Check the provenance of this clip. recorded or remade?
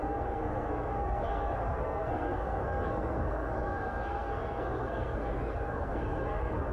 remade